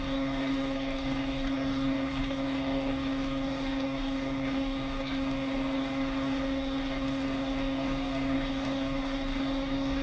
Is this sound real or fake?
fake